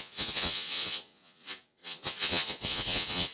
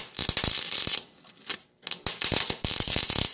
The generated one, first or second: first